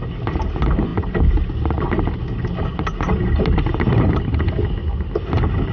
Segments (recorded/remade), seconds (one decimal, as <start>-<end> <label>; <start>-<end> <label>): 0.0-5.7 recorded